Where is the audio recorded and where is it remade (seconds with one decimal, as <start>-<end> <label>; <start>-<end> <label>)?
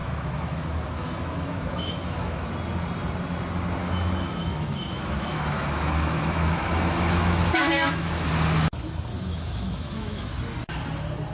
0.0-2.5 remade; 2.5-3.8 recorded; 3.8-8.3 remade; 8.3-9.1 recorded; 9.1-10.3 remade; 10.3-11.3 recorded